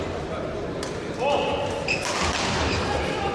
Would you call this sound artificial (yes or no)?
no